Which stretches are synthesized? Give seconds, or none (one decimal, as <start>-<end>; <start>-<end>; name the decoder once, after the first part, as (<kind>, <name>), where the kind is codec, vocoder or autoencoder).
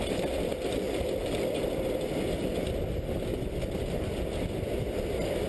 none